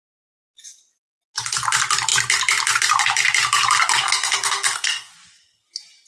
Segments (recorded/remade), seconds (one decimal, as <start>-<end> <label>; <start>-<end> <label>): 0.0-4.0 recorded; 4.0-5.1 remade; 5.1-6.1 recorded